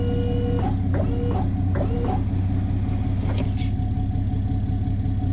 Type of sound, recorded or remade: recorded